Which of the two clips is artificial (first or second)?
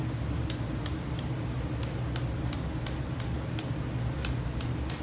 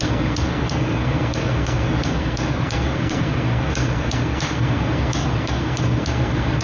second